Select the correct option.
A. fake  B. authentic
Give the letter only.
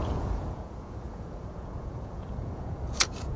A